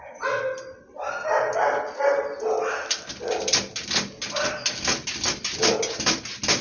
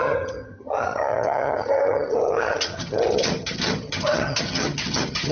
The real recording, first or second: first